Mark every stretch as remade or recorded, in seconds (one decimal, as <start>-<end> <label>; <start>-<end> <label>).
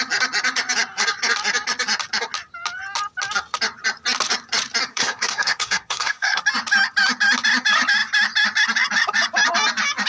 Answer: 0.0-4.9 recorded; 4.9-6.4 remade; 6.4-10.1 recorded